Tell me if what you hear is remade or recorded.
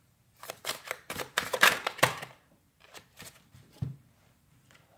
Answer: remade